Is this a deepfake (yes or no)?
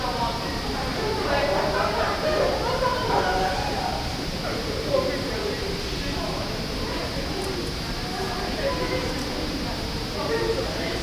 no